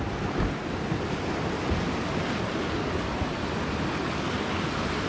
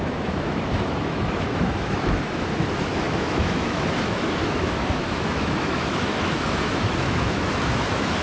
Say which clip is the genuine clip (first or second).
first